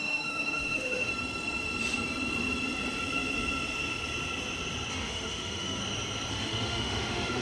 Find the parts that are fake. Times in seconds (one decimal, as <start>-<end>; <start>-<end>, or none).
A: 0.0-1.1; 4.9-5.8; 6.3-7.4